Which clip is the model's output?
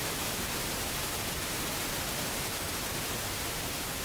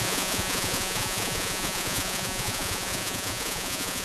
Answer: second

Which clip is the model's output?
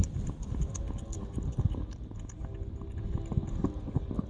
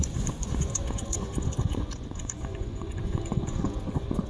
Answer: second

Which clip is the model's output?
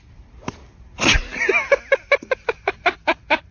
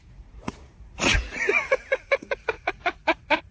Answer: second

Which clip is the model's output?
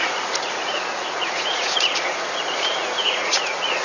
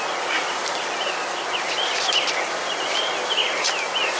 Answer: first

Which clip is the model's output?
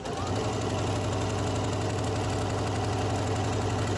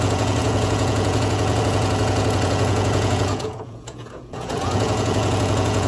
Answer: second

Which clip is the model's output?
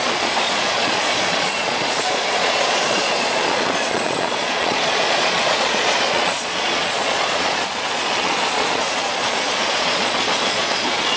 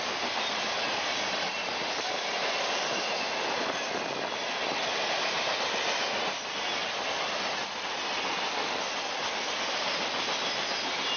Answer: first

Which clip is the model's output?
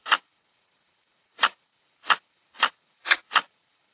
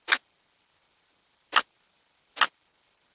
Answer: first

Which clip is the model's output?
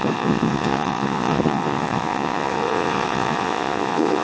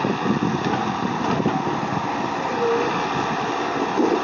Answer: first